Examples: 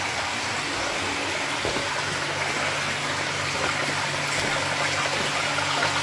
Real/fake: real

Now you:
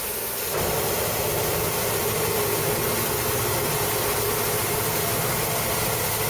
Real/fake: real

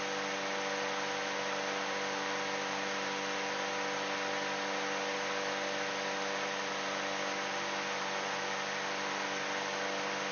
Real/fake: real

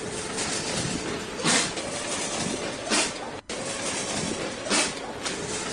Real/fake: fake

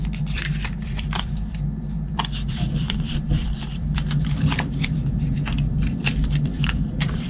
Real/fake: fake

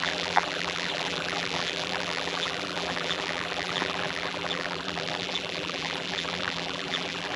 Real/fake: fake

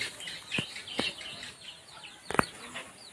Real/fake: real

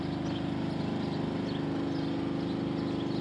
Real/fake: real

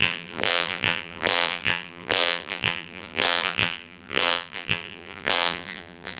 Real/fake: fake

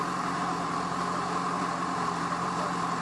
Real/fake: fake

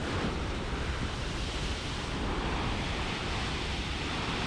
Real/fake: fake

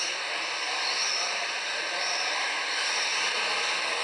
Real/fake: real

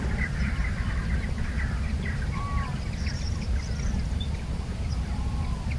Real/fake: real